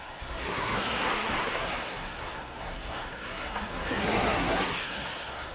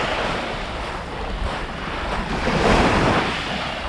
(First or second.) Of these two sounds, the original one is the second